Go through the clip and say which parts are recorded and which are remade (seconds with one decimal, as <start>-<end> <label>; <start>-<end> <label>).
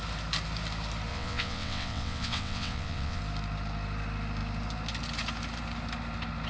0.0-1.1 recorded; 1.1-3.2 remade; 3.2-6.5 recorded